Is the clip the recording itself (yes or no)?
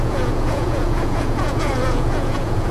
no